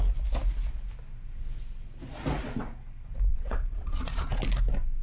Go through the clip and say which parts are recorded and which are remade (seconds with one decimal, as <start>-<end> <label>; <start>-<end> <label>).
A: 0.0-3.3 recorded; 3.3-4.4 remade; 4.4-5.0 recorded